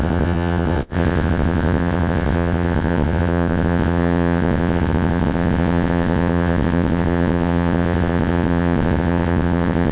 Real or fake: fake